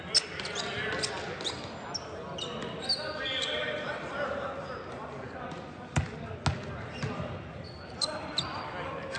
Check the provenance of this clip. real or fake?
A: real